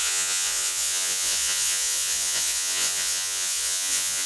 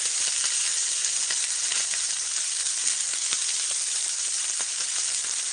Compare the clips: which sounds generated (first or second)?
first